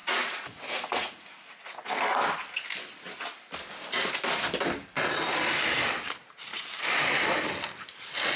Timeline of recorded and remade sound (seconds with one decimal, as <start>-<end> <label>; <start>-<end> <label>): 0.0-1.9 remade; 1.9-8.4 recorded